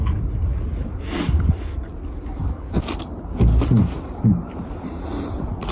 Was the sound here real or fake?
real